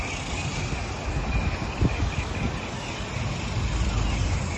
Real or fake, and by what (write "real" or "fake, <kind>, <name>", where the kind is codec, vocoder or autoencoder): real